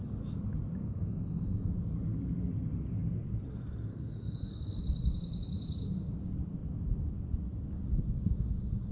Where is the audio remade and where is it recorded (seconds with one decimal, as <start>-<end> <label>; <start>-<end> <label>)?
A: 0.0-0.8 recorded; 0.8-1.7 remade; 1.7-3.9 recorded; 3.9-4.8 remade; 4.8-8.9 recorded